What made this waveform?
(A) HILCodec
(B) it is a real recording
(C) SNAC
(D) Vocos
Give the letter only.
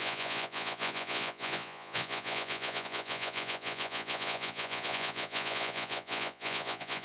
D